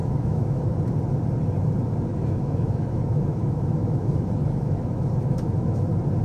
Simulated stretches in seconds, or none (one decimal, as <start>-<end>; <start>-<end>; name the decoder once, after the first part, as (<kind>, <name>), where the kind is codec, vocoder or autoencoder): 0.0-0.6 (autoencoder, DAC-VAE); 2.1-5.8